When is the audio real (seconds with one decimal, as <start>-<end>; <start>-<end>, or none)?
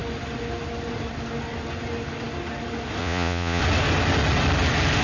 0.0-3.0; 3.6-5.0